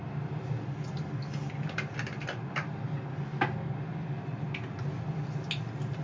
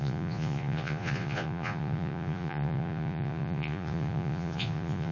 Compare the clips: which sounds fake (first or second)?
second